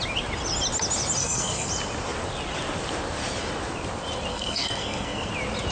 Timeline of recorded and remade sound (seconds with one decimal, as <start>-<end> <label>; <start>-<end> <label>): 0.0-1.2 recorded; 1.2-1.7 remade; 1.7-4.3 recorded; 4.3-5.3 remade; 5.3-5.7 recorded